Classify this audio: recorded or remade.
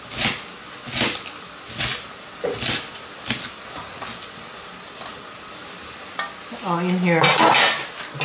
recorded